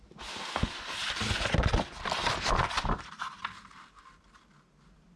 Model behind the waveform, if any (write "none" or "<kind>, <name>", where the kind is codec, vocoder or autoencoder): none